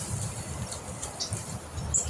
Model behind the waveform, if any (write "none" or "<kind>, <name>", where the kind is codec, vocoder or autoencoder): none